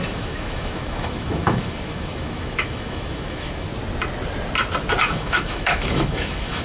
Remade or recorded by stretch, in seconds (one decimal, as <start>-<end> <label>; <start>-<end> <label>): 0.0-3.7 remade; 3.7-5.0 recorded; 5.0-6.6 remade